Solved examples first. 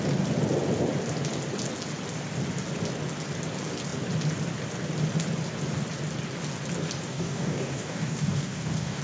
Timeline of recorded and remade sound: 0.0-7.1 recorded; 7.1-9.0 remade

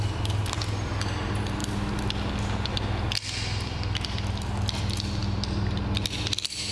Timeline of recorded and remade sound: 0.0-6.7 recorded

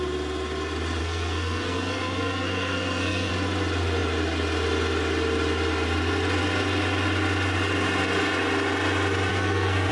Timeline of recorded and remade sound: 0.0-1.0 recorded; 1.0-3.3 remade; 3.3-9.3 recorded; 9.3-9.9 remade